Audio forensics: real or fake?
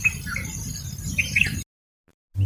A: real